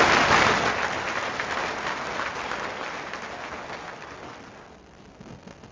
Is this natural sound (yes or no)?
yes